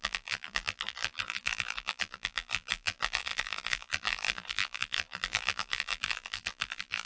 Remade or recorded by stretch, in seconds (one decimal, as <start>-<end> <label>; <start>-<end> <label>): 0.0-7.1 remade